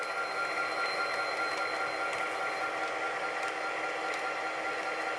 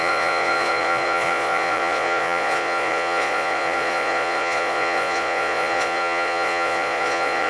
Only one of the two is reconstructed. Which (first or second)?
second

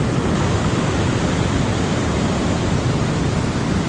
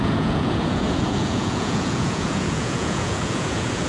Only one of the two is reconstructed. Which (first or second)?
second